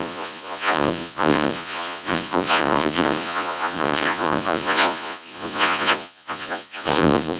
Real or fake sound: fake